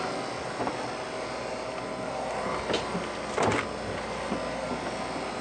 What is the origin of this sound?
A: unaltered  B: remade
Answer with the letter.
A